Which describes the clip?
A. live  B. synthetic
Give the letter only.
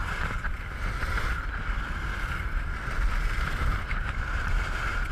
A